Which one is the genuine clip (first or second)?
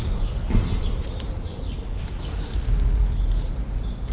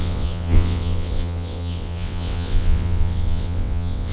first